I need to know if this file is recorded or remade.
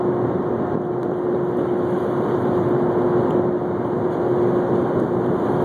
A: recorded